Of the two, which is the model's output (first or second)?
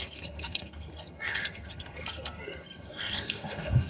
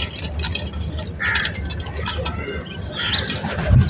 first